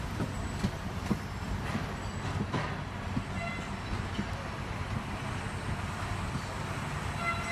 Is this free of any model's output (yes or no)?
yes